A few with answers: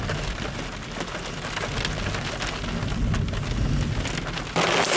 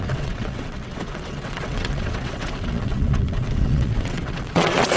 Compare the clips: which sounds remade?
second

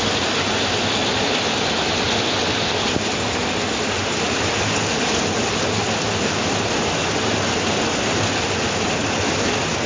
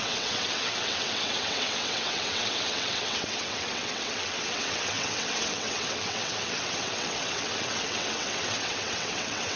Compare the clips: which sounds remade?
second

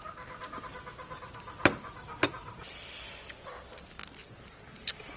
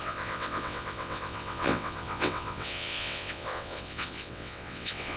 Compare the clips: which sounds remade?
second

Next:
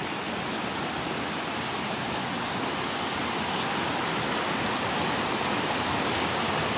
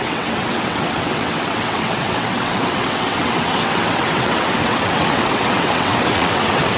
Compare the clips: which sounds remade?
second